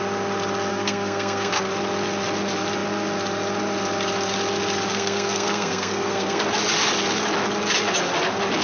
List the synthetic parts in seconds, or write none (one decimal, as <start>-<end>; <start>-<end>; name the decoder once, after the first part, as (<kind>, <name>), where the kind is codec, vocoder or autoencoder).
0.7-1.5 (codec, SNAC); 4.9-6.4